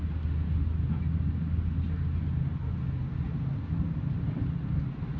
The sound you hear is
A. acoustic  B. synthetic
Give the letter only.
A